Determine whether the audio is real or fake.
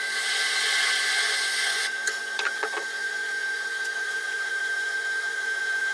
fake